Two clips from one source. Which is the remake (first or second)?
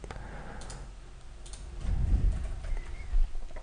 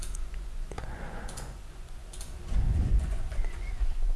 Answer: second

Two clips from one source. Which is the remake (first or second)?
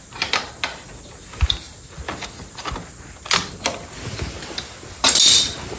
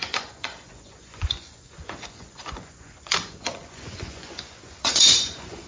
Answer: second